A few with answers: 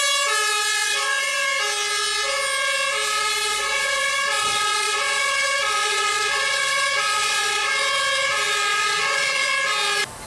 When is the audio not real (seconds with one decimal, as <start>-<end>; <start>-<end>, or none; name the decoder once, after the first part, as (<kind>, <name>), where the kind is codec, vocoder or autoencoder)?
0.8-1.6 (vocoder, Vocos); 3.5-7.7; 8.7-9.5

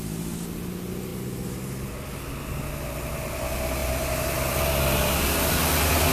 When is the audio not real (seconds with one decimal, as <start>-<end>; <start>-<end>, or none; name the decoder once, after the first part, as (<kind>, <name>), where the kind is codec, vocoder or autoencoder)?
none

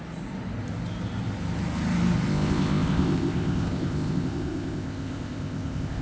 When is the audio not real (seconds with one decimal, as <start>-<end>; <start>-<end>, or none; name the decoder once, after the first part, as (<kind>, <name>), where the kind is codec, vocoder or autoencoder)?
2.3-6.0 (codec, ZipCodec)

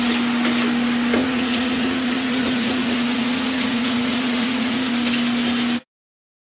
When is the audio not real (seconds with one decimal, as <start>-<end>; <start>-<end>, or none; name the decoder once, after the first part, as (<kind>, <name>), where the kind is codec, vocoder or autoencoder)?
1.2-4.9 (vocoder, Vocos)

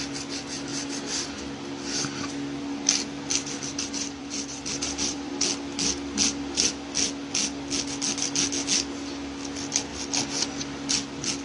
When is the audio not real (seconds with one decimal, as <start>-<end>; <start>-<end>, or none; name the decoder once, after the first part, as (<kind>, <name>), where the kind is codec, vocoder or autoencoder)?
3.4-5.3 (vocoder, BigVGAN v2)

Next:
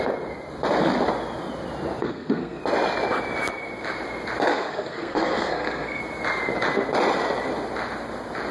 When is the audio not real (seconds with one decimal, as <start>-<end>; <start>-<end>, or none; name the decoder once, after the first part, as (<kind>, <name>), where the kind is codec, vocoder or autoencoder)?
2.0-2.6 (codec, SNAC); 4.5-6.0

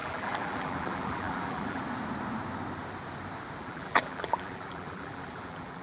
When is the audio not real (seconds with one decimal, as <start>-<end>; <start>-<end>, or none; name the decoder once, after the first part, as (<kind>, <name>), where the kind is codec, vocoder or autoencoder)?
0.0-1.8 (vocoder, BigVGAN v2); 3.6-5.8